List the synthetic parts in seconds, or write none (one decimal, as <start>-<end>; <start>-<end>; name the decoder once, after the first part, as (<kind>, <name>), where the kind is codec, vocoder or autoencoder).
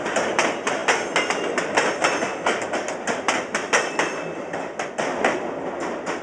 none